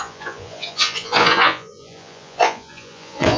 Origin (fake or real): fake